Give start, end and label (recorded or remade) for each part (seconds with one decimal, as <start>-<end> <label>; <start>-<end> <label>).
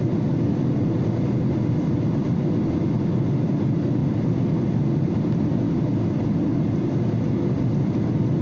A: 0.0-8.4 recorded